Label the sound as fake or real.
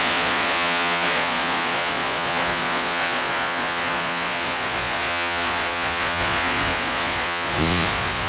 fake